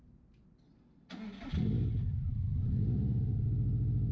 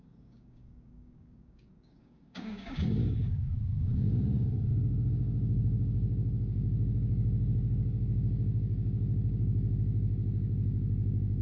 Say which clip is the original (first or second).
first